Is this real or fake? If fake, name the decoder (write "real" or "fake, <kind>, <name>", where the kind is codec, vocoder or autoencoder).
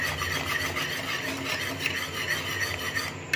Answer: real